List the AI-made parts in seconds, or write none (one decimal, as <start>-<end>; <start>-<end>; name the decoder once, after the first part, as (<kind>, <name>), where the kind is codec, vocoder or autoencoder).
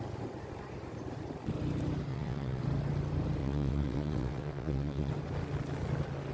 2.1-2.6 (vocoder, WaveNeXt); 3.4-5.1